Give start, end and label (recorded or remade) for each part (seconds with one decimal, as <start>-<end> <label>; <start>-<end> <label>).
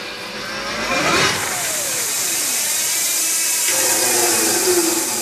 0.0-0.9 recorded; 0.9-3.6 remade; 3.6-5.2 recorded